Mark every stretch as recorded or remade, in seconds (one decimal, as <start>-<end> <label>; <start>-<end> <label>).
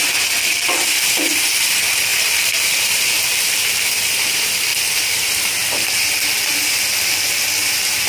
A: 0.0-2.1 recorded; 2.1-3.4 remade; 3.4-4.7 recorded; 4.7-5.7 remade; 5.7-8.1 recorded